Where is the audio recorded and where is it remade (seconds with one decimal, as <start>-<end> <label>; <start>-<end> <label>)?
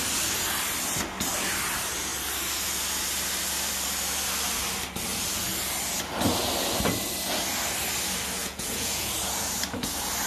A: 0.0-8.4 recorded; 8.4-9.1 remade; 9.1-10.3 recorded